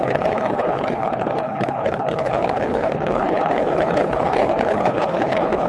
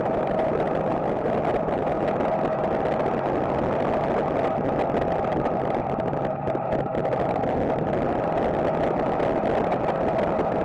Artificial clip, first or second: first